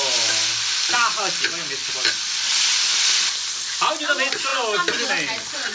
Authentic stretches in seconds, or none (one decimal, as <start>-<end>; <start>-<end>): 0.0-5.7

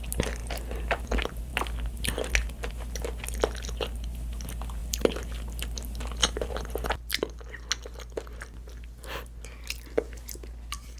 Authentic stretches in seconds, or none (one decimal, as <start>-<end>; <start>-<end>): 0.0-11.0

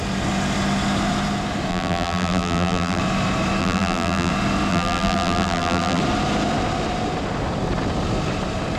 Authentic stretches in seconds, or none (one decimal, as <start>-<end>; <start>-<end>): 0.0-1.7; 3.0-3.6; 4.3-4.7; 6.0-8.8

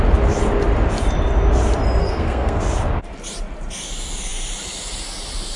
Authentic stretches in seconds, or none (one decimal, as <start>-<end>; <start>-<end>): 0.0-2.0; 2.6-5.6